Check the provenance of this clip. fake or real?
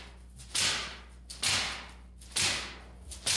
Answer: real